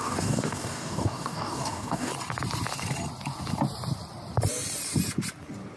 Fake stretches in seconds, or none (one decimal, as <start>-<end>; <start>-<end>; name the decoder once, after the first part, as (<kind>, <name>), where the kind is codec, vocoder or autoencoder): 0.0-2.1 (codec, DAC)